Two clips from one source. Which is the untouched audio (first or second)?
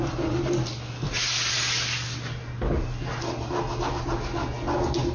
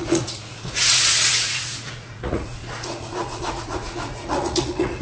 first